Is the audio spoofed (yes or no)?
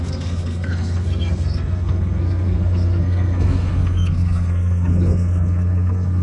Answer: yes